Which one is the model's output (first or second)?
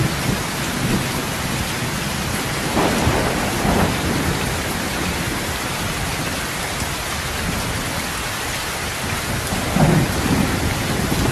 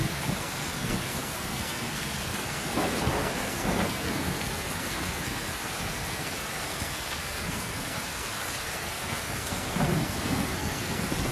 second